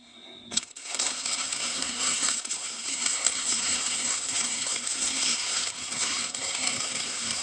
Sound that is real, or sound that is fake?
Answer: fake